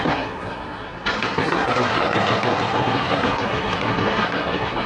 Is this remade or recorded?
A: remade